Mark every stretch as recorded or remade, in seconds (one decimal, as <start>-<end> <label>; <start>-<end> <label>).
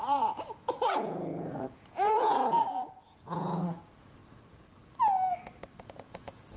0.0-4.2 remade; 4.2-5.8 recorded; 5.8-6.6 remade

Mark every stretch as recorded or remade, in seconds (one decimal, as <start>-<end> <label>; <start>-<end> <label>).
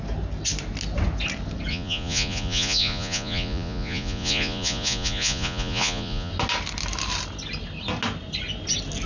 0.0-1.7 recorded; 1.7-6.3 remade; 6.3-9.1 recorded